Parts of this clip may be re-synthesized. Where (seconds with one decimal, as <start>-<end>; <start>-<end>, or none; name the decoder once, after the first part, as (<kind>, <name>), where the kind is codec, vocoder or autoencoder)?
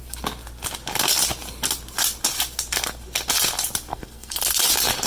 3.9-4.4 (codec, SNAC)